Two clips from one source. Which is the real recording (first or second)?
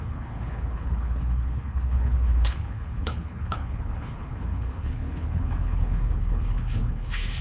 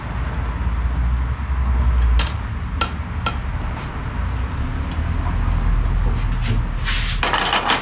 second